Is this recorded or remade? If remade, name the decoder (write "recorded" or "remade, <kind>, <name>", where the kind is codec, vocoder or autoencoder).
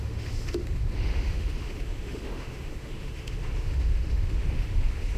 remade, autoencoder, DAC-VAE